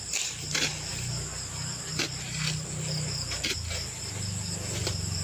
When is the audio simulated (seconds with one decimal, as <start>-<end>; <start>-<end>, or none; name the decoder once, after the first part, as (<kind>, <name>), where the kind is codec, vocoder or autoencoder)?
none